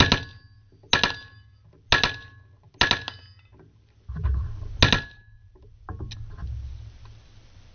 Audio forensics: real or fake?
real